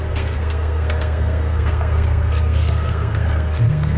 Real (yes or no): no